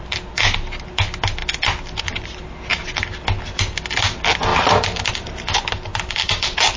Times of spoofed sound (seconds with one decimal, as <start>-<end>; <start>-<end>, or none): none